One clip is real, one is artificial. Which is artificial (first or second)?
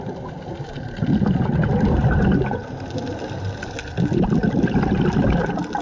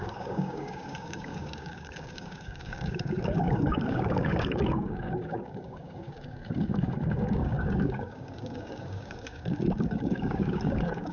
second